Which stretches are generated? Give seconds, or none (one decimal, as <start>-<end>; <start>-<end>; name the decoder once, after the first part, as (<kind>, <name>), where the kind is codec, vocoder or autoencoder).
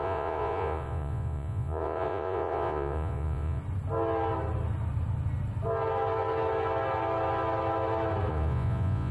0.0-3.6 (vocoder, Vocos); 8.3-9.1